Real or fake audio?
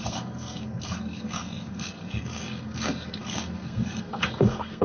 fake